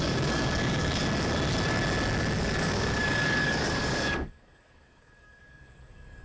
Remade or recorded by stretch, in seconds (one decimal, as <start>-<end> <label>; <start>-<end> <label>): 0.0-1.0 remade; 1.0-2.4 recorded; 2.4-6.2 remade

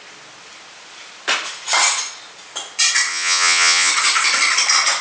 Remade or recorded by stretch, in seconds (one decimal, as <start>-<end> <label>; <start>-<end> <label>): 0.0-3.1 recorded; 3.1-3.9 remade; 3.9-5.0 recorded

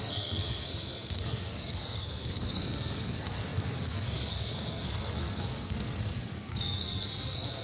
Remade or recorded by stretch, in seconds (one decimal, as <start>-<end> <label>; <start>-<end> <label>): 0.0-7.6 remade

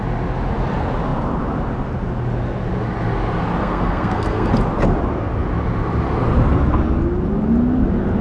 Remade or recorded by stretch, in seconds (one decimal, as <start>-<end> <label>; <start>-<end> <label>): 0.0-3.6 recorded; 3.6-4.5 remade; 4.5-8.2 recorded